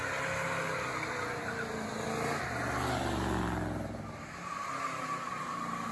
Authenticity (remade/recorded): recorded